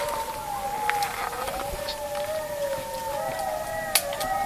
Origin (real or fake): real